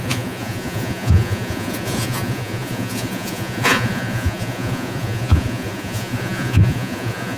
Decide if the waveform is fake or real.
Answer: fake